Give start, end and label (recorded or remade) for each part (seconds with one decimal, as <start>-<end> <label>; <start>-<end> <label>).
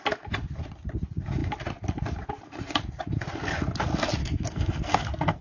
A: 0.0-4.2 recorded; 4.2-5.4 remade